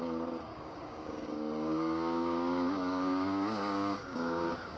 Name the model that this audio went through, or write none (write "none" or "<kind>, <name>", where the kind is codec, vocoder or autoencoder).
codec, DAC